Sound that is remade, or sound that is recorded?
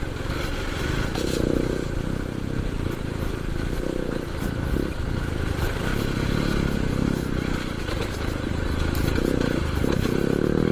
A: recorded